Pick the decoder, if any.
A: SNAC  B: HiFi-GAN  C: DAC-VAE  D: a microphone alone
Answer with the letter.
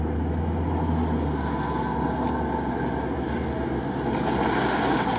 D